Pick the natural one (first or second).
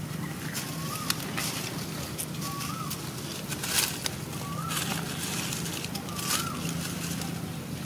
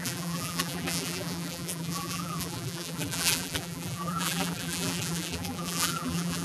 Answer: first